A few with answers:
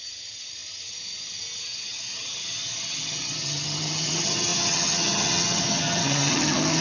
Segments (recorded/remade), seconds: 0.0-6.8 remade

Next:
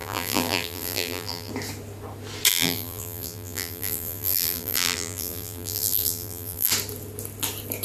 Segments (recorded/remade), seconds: 0.0-1.5 remade; 1.5-2.5 recorded; 2.5-6.7 remade; 6.7-7.8 recorded